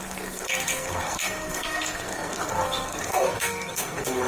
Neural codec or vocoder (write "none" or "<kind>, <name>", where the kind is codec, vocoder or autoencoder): codec, SNAC